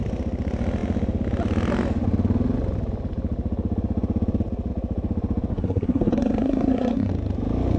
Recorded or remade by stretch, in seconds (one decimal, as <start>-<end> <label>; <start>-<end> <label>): 0.0-5.5 recorded; 5.5-7.1 remade; 7.1-7.8 recorded